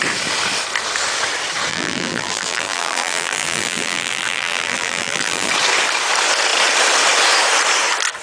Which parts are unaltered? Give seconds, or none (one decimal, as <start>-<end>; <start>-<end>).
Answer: 0.0-1.7; 5.5-8.2